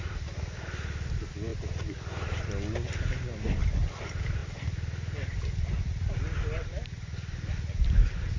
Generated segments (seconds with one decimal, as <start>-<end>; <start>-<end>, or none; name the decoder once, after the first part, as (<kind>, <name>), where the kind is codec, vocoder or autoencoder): none